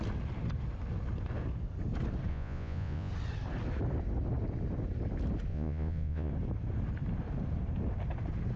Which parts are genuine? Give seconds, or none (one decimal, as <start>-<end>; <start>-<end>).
0.0-2.3; 3.1-5.5; 6.3-8.6